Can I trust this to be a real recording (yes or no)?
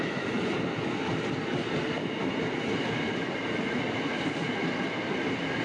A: yes